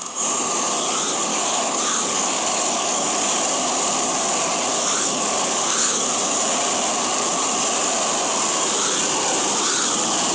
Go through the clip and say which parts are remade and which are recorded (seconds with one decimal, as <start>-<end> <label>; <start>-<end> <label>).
0.0-1.3 recorded; 1.3-3.1 remade; 3.1-4.7 recorded; 4.7-6.0 remade; 6.0-10.3 recorded